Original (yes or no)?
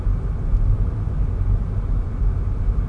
yes